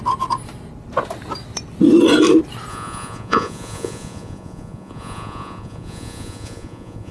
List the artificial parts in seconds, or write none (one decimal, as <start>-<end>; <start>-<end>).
2.7-7.1